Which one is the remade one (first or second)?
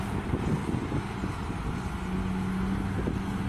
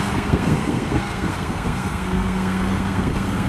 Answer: second